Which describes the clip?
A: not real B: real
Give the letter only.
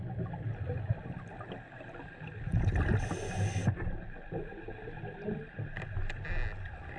B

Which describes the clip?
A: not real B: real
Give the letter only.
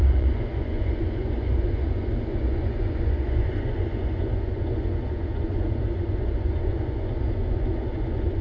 A